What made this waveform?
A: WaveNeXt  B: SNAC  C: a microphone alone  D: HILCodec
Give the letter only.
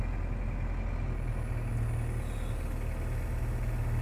C